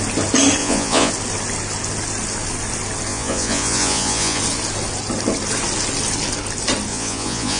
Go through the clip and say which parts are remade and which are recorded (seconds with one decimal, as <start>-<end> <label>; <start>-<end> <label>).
0.0-0.6 recorded; 0.6-1.1 remade; 1.1-3.1 recorded; 3.1-4.4 remade; 4.4-6.9 recorded; 6.9-7.6 remade